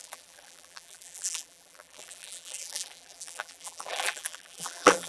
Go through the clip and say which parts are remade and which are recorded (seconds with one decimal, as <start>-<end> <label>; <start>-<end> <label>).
0.0-5.1 remade